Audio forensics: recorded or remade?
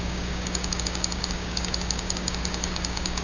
remade